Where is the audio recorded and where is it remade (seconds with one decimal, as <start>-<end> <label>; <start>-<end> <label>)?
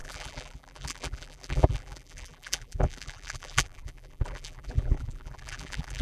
0.0-6.0 remade